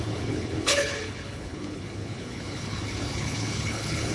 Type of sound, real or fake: fake